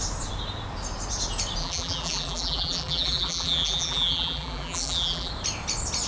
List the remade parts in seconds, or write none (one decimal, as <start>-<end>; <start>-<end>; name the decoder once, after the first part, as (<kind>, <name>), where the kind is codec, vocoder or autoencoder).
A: 1.6-5.3 (vocoder, BigVGAN v2)